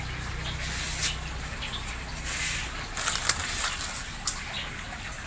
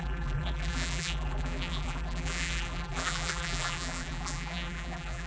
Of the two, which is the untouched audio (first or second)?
first